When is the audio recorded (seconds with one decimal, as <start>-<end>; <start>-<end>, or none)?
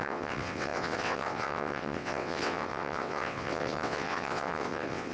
none